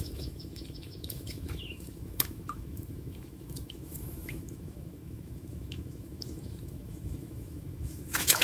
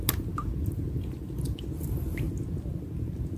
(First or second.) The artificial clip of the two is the first